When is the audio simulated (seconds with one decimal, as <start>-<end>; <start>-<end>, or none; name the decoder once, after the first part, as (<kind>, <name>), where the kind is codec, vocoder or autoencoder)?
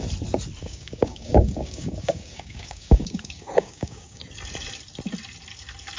0.6-4.2 (codec, DAC)